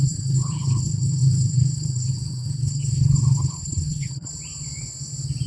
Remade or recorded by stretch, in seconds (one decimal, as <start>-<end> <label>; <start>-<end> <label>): 0.0-4.3 remade; 4.3-5.5 recorded